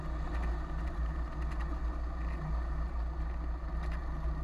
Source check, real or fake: real